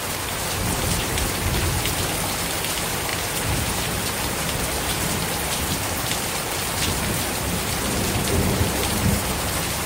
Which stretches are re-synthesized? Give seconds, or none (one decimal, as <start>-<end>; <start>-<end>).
none